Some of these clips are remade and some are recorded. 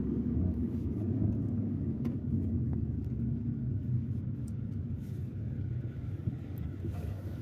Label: remade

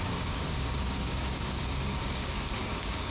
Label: remade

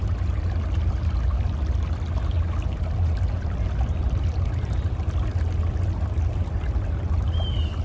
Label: recorded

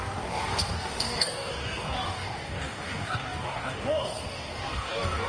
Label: remade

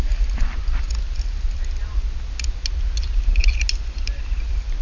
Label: recorded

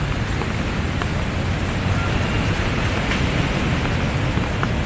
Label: recorded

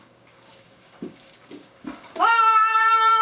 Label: remade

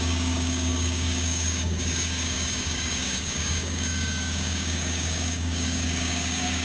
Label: remade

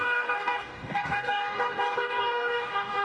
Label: remade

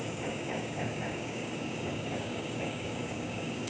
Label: remade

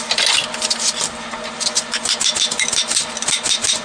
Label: recorded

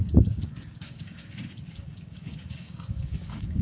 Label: remade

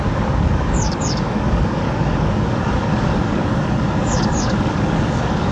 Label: remade